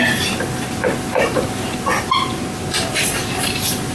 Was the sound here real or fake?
real